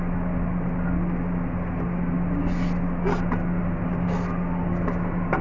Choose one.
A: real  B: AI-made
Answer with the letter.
A